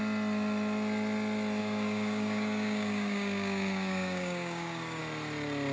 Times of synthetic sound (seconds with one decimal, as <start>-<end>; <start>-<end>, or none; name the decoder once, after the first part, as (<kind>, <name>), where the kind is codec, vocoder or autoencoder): 1.6-5.0 (codec, DAC)